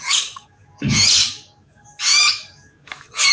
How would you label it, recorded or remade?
remade